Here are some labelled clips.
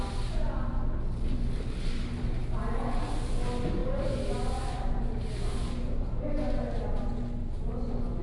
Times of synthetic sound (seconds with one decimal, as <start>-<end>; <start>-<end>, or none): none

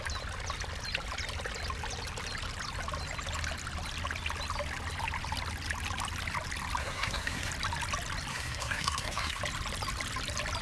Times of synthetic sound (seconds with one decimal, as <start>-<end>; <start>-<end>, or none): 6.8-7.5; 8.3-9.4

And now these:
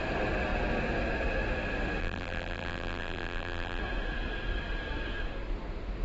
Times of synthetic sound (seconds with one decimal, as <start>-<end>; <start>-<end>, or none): 2.0-3.8

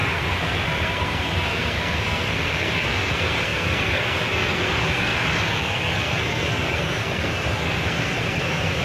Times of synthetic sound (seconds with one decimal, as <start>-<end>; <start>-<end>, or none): 0.0-8.8

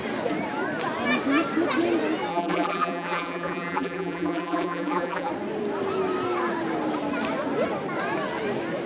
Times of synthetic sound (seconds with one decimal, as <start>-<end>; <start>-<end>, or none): 2.3-5.3